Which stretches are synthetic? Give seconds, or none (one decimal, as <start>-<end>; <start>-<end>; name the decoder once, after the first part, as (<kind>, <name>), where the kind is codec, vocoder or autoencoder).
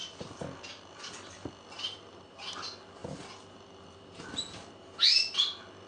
none